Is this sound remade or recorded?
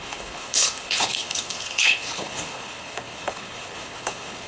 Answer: remade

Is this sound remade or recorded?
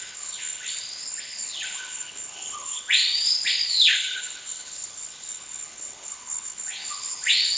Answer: remade